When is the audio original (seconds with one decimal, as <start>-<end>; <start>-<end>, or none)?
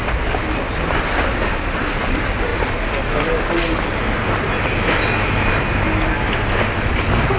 0.0-7.4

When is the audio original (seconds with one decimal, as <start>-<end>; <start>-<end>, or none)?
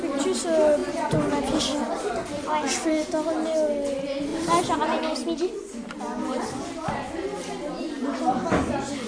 0.0-4.3; 5.0-9.1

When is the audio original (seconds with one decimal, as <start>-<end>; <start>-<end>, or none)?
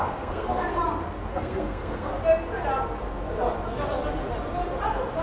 0.8-1.3; 2.1-5.2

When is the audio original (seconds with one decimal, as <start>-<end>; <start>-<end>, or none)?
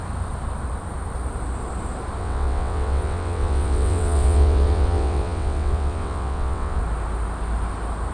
0.0-2.2; 6.8-8.1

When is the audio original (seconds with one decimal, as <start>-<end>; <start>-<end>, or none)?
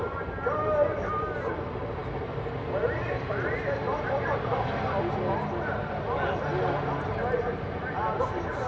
0.0-8.7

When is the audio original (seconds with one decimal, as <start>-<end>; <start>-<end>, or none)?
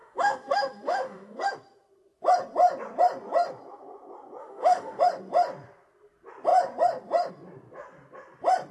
1.4-4.4; 5.0-8.7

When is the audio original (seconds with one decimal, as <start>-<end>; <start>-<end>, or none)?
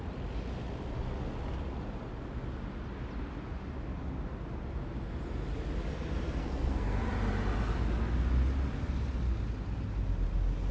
0.0-6.4; 7.0-10.7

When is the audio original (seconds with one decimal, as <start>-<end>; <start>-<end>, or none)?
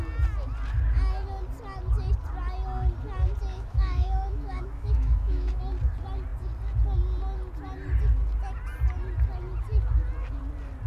0.0-3.5; 5.6-10.9